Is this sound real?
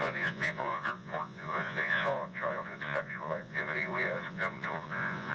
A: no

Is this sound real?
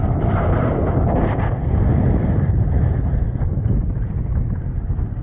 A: yes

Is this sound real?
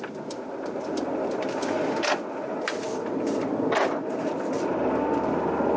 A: yes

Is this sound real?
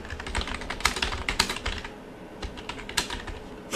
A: yes